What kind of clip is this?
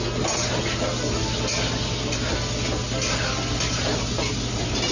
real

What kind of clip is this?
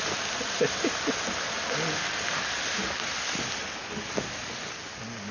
real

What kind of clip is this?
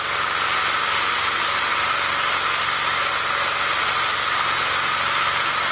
real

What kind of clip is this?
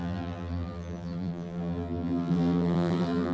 fake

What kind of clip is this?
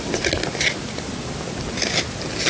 real